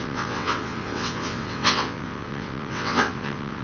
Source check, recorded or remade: remade